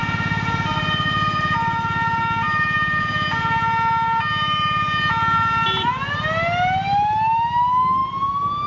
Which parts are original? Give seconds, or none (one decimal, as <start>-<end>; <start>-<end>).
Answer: 0.0-8.7